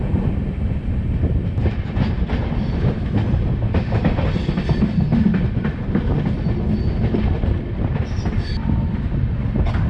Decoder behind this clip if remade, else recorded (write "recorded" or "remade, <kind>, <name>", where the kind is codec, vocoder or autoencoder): recorded